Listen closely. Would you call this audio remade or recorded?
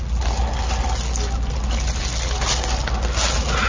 recorded